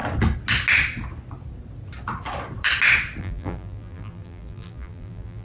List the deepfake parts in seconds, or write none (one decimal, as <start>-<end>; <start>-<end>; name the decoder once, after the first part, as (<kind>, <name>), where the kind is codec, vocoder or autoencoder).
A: 3.2-5.4 (vocoder, BigVGAN v2)